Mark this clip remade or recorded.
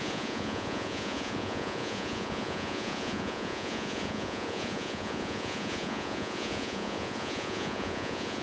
remade